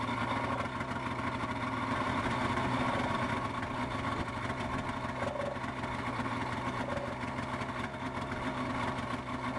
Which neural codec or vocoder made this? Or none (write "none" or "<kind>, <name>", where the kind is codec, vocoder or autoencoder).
none